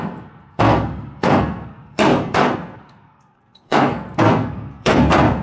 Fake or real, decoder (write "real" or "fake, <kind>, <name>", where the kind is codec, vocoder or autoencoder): fake, codec, SNAC